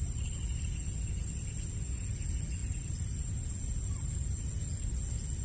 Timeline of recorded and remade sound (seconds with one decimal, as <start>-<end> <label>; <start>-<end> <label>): 0.0-5.4 recorded